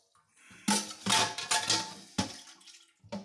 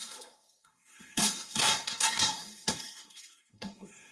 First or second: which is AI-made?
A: second